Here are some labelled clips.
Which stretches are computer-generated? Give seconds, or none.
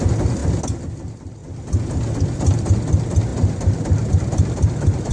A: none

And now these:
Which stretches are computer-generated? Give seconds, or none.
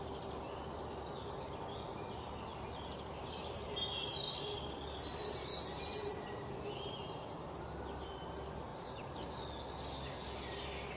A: 3.2-4.4; 5.5-6.7; 8.7-9.2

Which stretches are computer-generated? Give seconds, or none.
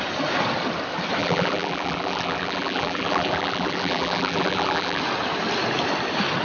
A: 1.2-5.0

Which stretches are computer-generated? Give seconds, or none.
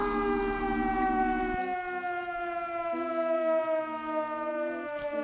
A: none